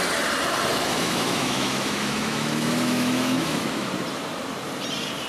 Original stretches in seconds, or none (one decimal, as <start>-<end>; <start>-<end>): 0.0-0.7; 3.9-5.3